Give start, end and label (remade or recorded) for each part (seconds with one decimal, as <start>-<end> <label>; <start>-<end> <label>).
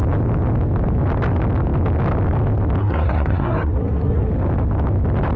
0.0-2.8 recorded; 2.8-4.3 remade; 4.3-5.4 recorded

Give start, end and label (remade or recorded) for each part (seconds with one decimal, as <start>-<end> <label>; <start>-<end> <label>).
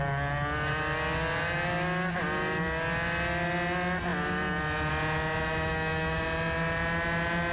0.0-7.5 recorded